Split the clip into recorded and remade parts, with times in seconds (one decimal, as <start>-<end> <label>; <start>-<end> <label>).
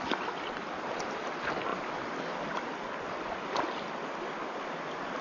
0.0-5.2 recorded